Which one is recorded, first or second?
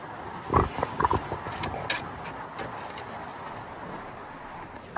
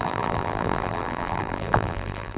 first